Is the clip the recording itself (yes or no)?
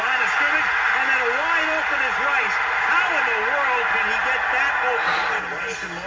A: yes